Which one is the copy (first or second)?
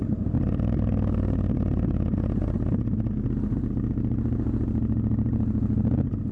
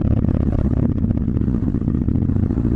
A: second